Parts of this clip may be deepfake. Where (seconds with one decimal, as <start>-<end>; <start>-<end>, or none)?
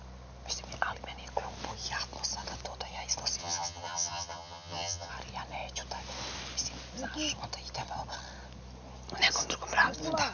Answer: 3.4-5.1